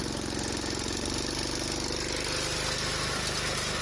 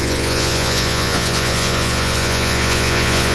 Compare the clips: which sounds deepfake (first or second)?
second